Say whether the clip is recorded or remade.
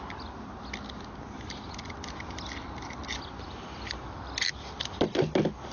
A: recorded